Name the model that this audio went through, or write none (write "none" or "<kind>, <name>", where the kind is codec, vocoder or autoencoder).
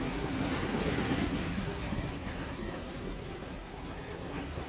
codec, SNAC